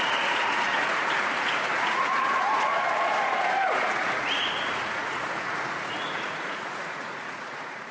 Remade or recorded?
remade